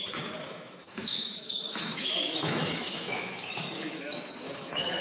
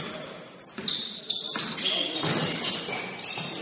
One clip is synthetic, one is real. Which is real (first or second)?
second